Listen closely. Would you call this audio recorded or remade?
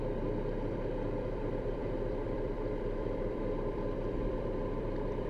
remade